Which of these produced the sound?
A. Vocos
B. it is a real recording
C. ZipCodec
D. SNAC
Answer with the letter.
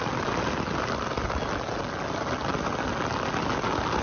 B